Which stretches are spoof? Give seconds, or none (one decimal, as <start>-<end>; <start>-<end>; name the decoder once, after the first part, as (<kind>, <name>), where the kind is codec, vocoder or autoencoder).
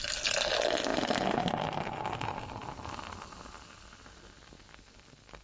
none